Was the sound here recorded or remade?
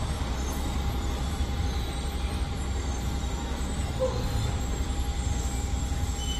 remade